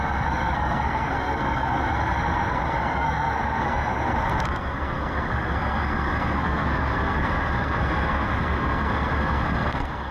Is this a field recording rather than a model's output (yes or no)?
no